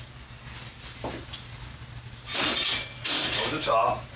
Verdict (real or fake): real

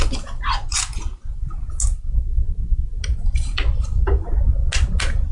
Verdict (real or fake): real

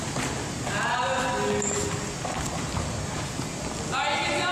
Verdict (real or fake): real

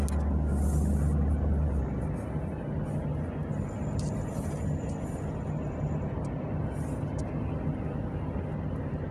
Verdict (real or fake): real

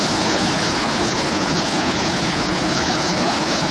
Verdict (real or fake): fake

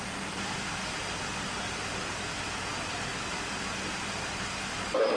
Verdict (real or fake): real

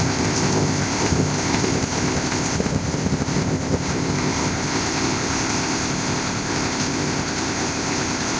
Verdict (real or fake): fake